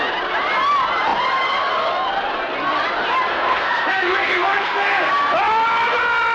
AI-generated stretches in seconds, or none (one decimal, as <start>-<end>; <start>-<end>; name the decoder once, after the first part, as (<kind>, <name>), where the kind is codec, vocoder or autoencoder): 3.3-5.1 (codec, SNAC)